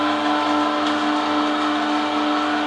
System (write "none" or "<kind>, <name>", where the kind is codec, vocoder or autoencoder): none